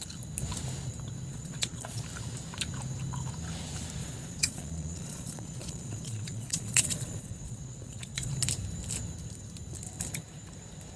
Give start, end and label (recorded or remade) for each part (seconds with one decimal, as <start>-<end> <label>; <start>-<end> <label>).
0.0-1.3 recorded; 1.3-2.0 remade; 2.0-4.0 recorded; 4.0-8.3 remade; 8.3-11.0 recorded